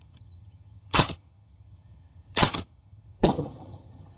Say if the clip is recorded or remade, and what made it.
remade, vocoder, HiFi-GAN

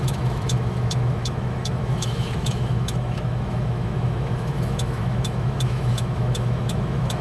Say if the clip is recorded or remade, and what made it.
remade, autoencoder, DAC-VAE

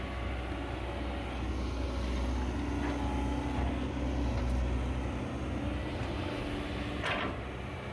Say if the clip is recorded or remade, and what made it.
recorded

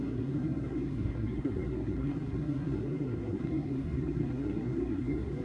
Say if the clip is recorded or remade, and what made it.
remade, codec, SNAC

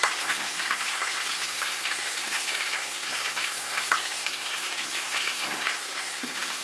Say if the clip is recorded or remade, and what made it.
remade, codec, SNAC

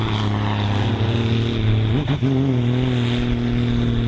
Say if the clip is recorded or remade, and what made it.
recorded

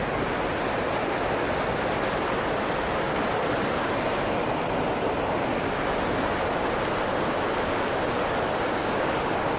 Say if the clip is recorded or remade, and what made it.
recorded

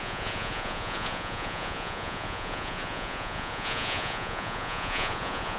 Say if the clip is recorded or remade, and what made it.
remade, vocoder, Vocos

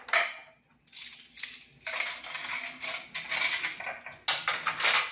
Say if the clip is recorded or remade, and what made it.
recorded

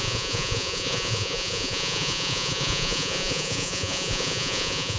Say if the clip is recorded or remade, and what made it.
remade, vocoder, Vocos